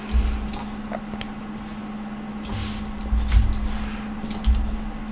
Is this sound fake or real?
real